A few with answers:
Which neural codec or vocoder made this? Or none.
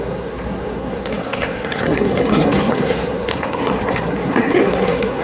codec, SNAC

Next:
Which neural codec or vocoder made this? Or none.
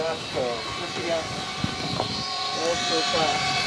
none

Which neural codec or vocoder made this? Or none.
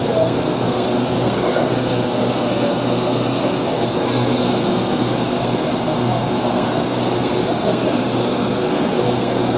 codec, SNAC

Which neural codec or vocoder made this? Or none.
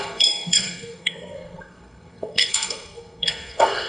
codec, SNAC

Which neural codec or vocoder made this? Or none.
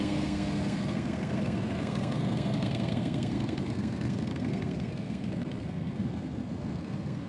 codec, SNAC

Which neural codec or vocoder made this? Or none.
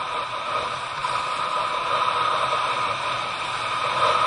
none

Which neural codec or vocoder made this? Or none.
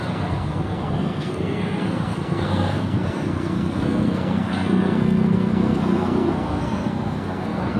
codec, SNAC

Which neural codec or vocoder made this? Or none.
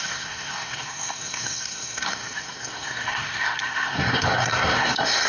codec, SNAC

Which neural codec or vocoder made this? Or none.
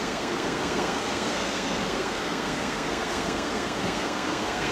codec, SNAC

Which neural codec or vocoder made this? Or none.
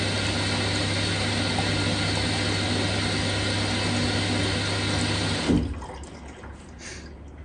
none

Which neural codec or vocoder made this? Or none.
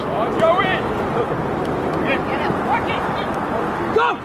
none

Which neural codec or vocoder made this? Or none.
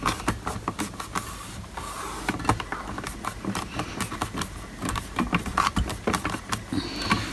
none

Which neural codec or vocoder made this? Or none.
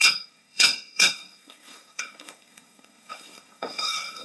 codec, SNAC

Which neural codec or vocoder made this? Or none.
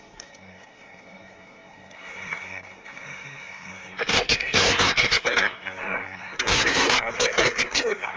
codec, SNAC